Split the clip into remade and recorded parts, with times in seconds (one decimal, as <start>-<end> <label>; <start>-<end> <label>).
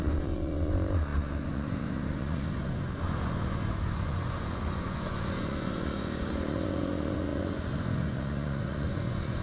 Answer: 0.0-9.4 remade